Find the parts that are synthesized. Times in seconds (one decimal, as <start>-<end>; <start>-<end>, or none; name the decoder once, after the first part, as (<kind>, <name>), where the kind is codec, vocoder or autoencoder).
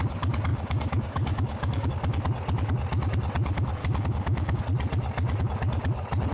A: 0.5-1.9 (codec, DAC); 3.8-4.6